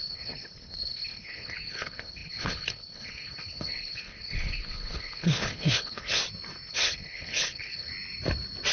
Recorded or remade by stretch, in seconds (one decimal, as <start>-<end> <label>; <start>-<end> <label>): 0.0-6.2 remade; 6.2-6.7 recorded; 6.7-7.9 remade; 7.9-8.7 recorded